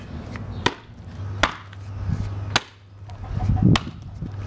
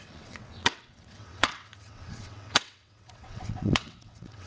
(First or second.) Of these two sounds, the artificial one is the second